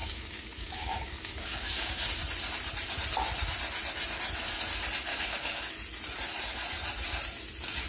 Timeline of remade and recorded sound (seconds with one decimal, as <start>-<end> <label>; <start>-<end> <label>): 0.0-2.1 remade; 2.1-5.1 recorded; 5.1-5.6 remade; 5.6-7.9 recorded